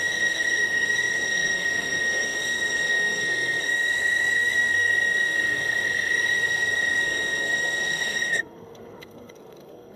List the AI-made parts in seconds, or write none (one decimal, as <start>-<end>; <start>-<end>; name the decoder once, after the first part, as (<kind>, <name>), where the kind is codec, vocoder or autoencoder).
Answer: 0.0-10.0 (codec, SNAC)